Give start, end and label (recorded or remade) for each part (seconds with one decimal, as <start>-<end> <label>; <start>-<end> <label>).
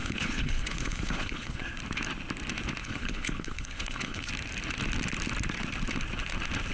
0.0-1.6 remade; 1.6-2.8 recorded; 2.8-4.3 remade; 4.3-6.7 recorded